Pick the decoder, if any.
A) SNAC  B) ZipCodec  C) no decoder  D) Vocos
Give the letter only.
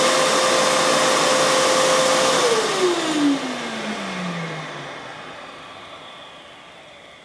C